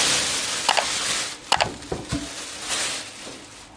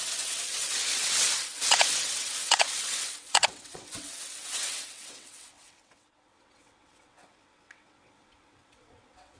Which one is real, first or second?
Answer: first